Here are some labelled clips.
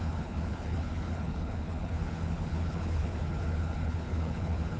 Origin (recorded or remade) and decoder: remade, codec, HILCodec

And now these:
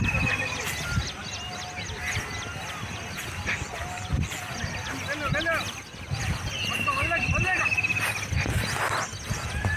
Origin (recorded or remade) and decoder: recorded